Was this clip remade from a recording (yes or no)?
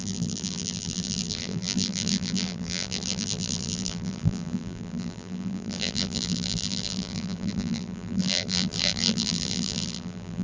yes